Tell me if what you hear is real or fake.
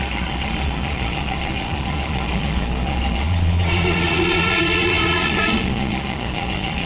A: fake